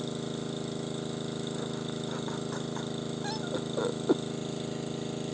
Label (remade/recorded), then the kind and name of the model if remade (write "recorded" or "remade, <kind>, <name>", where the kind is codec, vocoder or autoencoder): recorded